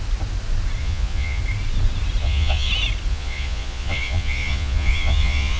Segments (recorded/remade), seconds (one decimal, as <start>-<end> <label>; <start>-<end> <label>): 0.0-0.8 recorded; 0.8-1.4 remade; 1.4-2.2 recorded; 2.2-2.7 remade; 2.7-3.1 recorded; 3.1-5.6 remade

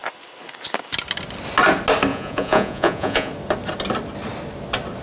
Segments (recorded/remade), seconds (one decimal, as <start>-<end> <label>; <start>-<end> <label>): 0.0-2.1 recorded; 2.1-3.3 remade; 3.3-5.0 recorded

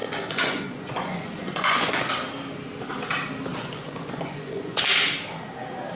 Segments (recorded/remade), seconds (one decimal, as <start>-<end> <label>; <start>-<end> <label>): 0.0-1.9 remade; 1.9-3.5 recorded; 3.5-4.8 remade; 4.8-6.0 recorded

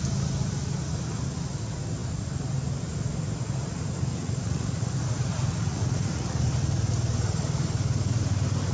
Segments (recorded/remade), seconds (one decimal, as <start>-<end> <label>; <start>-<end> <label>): 0.0-4.1 recorded; 4.1-4.9 remade; 4.9-5.7 recorded; 5.7-6.4 remade; 6.4-8.7 recorded